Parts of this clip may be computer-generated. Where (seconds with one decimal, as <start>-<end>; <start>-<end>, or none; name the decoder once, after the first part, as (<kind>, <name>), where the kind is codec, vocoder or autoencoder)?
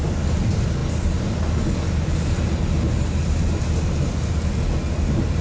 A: none